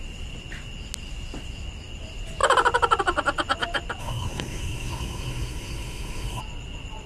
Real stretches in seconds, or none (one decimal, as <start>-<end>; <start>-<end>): 0.0-4.0; 6.4-7.1